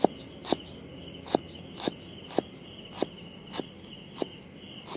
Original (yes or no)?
yes